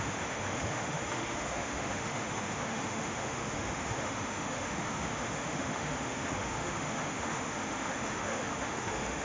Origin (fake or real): fake